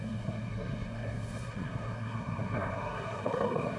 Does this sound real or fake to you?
fake